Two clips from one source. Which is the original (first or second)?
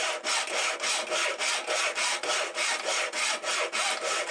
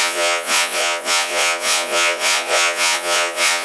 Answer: first